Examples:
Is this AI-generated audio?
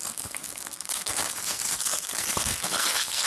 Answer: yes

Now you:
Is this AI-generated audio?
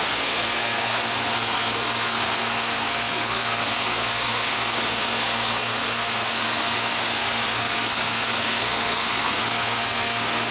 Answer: yes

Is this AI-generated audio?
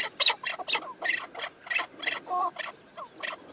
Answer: no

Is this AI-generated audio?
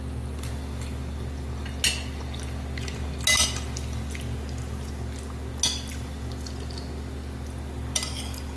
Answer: no